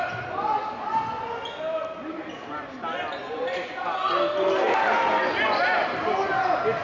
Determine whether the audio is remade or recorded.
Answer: recorded